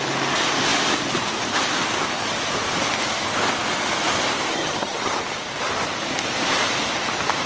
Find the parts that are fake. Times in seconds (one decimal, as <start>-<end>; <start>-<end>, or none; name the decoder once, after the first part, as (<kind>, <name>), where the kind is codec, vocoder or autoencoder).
4.5-5.1 (vocoder, HiFi-GAN)